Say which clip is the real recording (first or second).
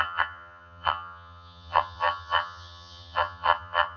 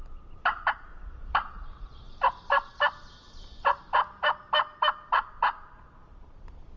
second